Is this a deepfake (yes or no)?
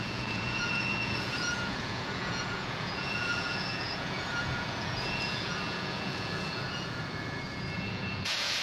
yes